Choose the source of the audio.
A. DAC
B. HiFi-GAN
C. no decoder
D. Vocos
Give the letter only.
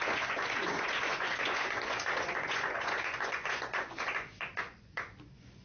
D